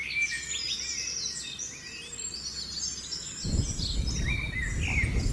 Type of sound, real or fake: real